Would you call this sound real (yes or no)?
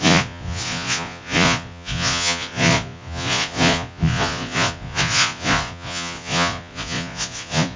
no